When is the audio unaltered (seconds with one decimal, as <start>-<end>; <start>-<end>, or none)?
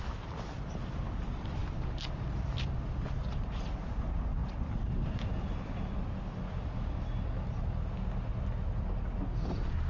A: 0.0-9.9